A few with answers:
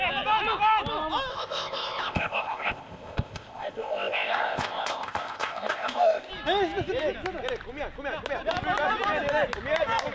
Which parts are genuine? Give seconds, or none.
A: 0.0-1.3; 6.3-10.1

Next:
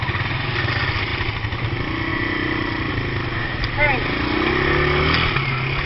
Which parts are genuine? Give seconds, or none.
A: 0.0-2.1; 2.9-5.9

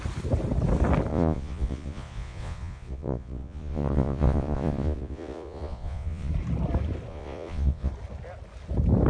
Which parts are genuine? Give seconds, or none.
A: 0.0-1.1; 6.3-7.1; 7.9-9.1

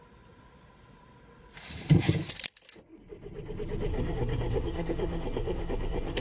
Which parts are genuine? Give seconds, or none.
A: 0.0-3.9